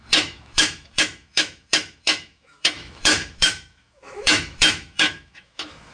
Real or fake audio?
fake